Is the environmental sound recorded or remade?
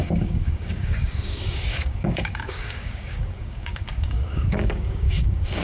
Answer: remade